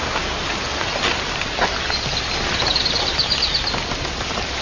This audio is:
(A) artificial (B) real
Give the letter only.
B